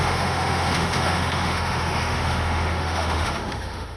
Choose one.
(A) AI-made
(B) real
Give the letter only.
A